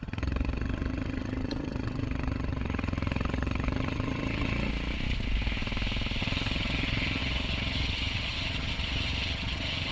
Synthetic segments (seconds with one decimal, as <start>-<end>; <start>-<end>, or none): 0.0-4.7; 6.2-9.9